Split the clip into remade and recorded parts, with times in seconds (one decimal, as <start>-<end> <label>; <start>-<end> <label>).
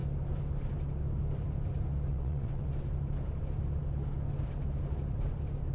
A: 0.0-2.1 recorded; 2.1-2.7 remade; 2.7-5.7 recorded